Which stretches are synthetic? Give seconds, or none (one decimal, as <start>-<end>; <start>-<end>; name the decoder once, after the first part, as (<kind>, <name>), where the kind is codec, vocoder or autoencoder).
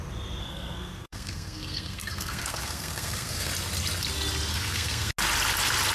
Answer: 0.4-3.5 (codec, SNAC); 4.5-5.1